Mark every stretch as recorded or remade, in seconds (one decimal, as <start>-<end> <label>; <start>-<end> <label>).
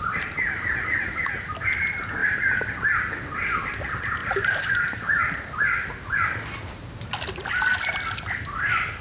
0.0-4.2 recorded; 4.2-5.0 remade; 5.0-9.0 recorded